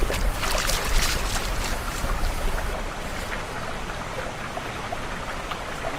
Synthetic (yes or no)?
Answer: no